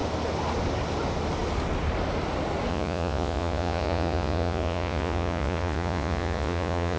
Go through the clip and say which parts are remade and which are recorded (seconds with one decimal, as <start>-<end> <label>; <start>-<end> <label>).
0.0-2.7 recorded; 2.7-7.0 remade

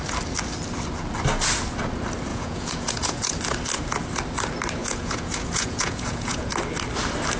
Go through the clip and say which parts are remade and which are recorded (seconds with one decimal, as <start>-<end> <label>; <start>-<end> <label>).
0.0-2.3 recorded; 2.3-3.3 remade; 3.3-4.8 recorded; 4.8-6.5 remade; 6.5-7.4 recorded